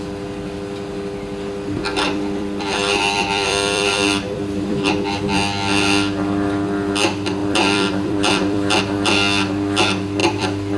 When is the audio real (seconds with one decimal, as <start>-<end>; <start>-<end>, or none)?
0.0-1.9; 5.2-7.4; 8.8-10.2